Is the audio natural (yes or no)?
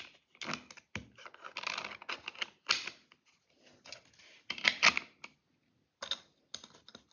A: yes